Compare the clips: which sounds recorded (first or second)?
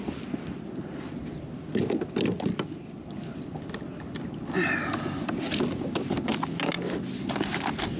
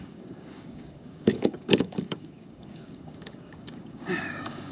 first